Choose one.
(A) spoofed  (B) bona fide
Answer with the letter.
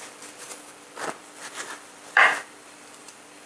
A